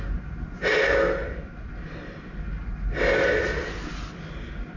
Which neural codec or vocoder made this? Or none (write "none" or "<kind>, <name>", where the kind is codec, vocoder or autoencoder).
none